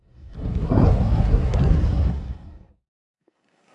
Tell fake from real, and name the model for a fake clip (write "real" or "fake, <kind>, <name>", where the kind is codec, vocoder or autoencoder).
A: fake, codec, SNAC